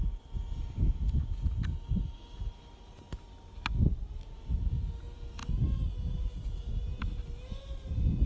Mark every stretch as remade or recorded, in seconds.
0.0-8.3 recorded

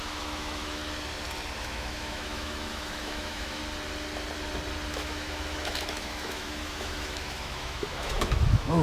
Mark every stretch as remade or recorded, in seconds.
0.0-0.8 remade; 0.8-1.6 recorded; 1.6-3.6 remade; 3.6-4.9 recorded; 4.9-8.8 remade

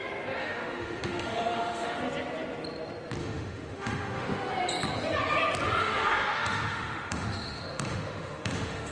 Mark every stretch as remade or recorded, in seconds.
0.0-0.4 recorded; 0.4-2.0 remade; 2.0-3.2 recorded; 3.2-4.5 remade; 4.5-5.8 recorded; 5.8-8.9 remade

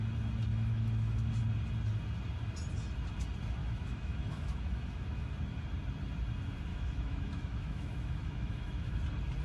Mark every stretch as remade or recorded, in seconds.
0.0-0.5 recorded; 0.5-1.3 remade; 1.3-3.6 recorded; 3.6-5.3 remade; 5.3-6.7 recorded; 6.7-9.0 remade; 9.0-9.4 recorded